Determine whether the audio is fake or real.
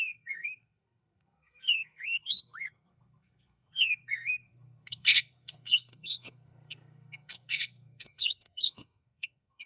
fake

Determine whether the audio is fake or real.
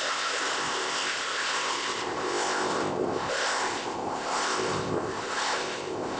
fake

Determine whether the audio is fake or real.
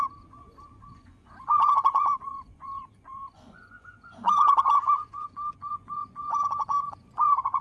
fake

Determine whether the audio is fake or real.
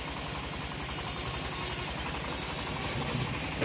real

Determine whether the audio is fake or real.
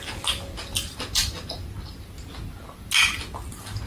real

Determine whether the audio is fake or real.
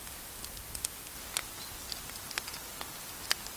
real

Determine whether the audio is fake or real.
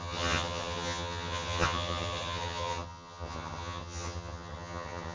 fake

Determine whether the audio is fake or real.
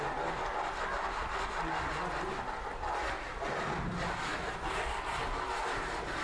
real